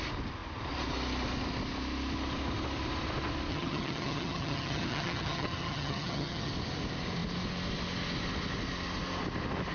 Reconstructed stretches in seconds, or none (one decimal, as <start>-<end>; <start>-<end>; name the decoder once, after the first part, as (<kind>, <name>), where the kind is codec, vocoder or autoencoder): 3.5-6.5 (vocoder, HiFi-GAN)